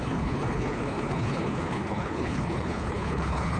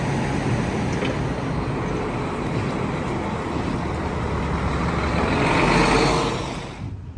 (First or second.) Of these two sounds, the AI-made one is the first